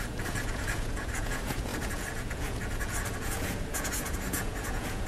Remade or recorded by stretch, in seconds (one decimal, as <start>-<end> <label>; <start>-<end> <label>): 0.0-5.1 remade